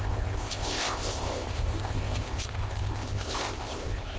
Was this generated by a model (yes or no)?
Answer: yes